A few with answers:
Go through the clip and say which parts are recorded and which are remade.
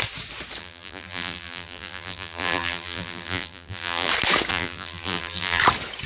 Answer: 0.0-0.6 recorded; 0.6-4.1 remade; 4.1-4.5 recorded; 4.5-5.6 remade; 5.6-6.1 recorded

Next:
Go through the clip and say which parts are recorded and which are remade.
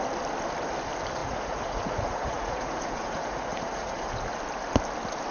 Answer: 0.0-1.2 recorded; 1.2-4.4 remade; 4.4-5.3 recorded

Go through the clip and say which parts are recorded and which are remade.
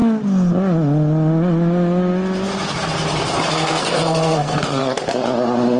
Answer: 0.0-3.5 recorded; 3.5-4.8 remade; 4.8-5.8 recorded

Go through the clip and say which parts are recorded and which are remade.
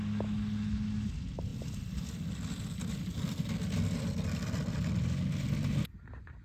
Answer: 0.0-6.4 recorded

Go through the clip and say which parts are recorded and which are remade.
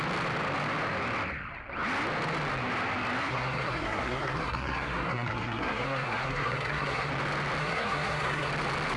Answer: 0.0-3.2 recorded; 3.2-7.1 remade; 7.1-7.6 recorded; 7.6-8.5 remade; 8.5-9.0 recorded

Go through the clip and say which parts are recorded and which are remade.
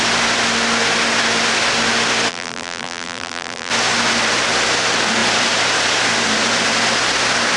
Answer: 0.0-2.3 recorded; 2.3-3.7 remade; 3.7-7.6 recorded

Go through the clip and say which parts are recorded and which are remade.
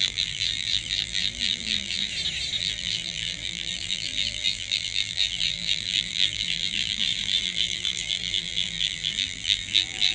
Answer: 0.0-2.1 remade; 2.1-2.6 recorded; 2.6-10.1 remade